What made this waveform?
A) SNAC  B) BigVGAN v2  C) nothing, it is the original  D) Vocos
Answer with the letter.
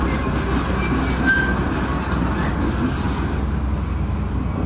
C